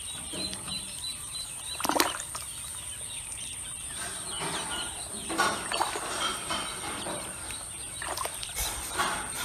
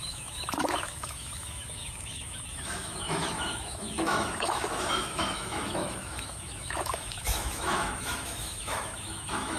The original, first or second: first